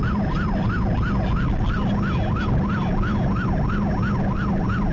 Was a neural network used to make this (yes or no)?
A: no